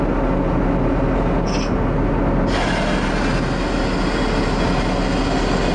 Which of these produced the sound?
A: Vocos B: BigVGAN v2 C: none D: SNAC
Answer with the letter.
C